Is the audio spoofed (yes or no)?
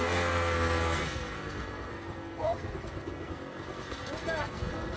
yes